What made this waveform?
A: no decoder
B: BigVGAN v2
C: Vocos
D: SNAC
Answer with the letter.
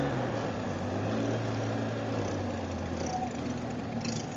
A